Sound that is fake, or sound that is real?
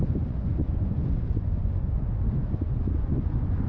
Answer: fake